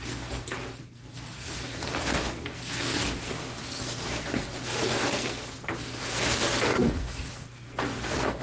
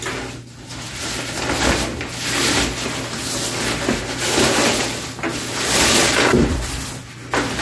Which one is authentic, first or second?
second